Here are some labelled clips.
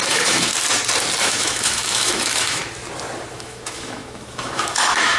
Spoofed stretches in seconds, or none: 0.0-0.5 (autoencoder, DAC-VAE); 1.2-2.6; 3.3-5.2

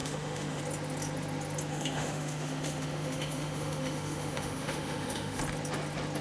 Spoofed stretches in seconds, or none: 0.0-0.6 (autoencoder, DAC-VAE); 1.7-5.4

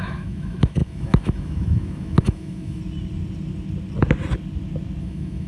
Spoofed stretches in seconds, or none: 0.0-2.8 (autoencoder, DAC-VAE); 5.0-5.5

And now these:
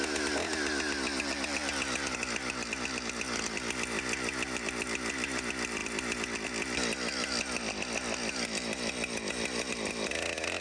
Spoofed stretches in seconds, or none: none